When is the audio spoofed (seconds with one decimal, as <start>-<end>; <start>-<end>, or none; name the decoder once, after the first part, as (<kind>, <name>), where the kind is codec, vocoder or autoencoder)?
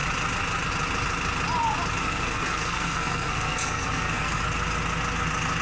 2.0-4.4 (codec, SNAC)